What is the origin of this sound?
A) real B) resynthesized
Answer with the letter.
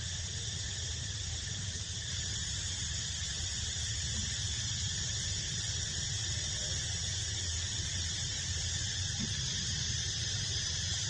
B